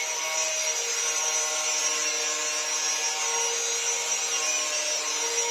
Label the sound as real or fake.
real